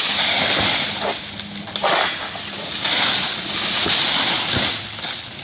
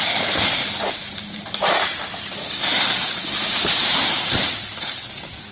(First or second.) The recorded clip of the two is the first